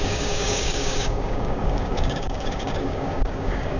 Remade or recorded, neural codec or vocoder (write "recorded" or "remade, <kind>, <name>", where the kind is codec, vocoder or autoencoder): remade, codec, DAC